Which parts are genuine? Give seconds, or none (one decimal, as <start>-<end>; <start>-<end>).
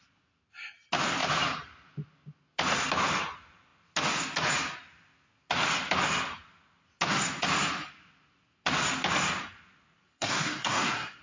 0.0-10.1